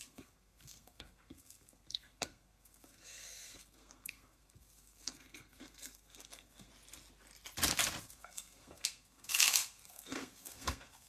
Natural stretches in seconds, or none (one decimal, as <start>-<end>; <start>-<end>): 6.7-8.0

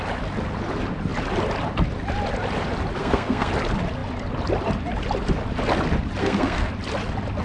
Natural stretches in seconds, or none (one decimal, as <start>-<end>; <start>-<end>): 0.0-3.0; 3.5-6.2; 6.7-7.4

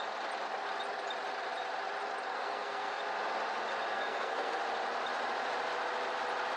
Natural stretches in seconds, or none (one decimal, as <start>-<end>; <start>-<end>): 0.0-2.3; 3.0-3.9; 4.6-6.6

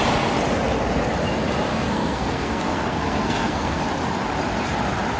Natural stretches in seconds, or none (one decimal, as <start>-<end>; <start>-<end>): 0.0-1.7; 3.8-5.2